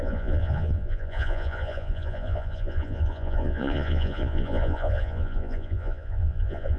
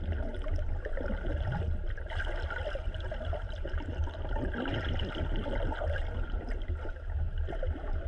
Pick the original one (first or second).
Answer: second